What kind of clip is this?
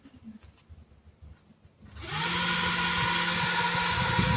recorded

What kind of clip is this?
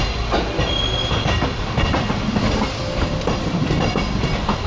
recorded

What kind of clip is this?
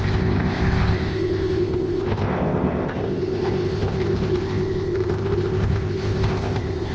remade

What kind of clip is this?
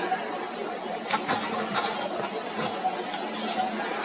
recorded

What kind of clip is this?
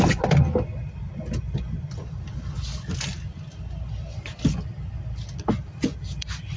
recorded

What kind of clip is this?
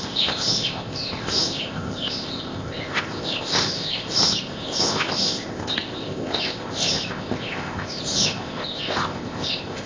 remade